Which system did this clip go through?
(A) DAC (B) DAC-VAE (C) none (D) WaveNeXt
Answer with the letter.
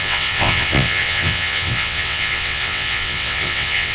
D